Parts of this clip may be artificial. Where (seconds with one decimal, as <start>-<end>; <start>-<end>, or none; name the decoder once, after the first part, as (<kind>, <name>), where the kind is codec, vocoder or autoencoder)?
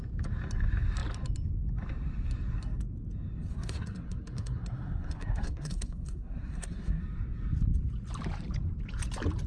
3.5-7.0 (codec, SNAC)